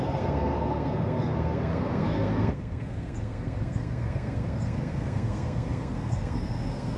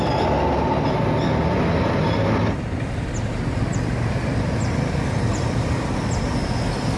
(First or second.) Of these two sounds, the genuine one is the second